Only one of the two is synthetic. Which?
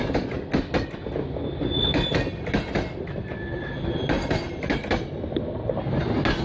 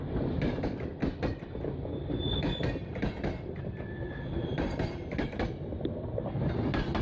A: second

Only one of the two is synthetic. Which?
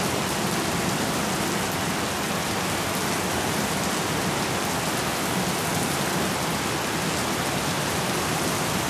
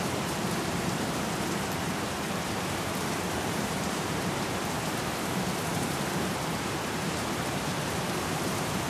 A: second